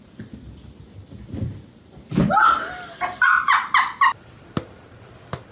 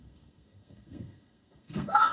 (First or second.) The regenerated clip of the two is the second